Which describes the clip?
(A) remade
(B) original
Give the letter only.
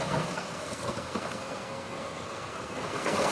A